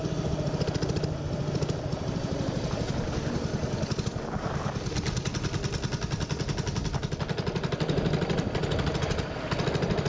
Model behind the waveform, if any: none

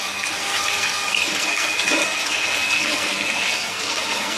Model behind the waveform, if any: codec, SNAC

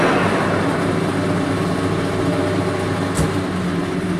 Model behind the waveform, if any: none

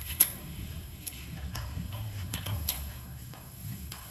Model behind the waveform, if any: codec, SNAC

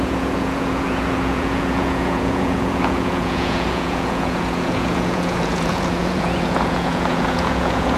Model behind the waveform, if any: vocoder, Vocos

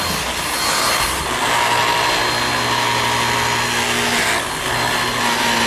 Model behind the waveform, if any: none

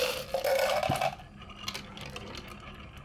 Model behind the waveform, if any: none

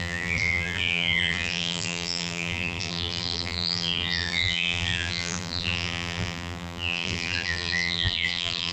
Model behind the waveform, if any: vocoder, BigVGAN v2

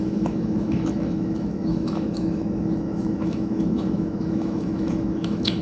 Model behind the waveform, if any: autoencoder, DAC-VAE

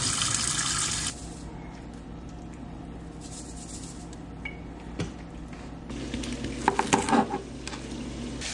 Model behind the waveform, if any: none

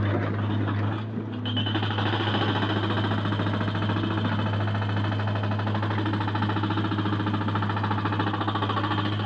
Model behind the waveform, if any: none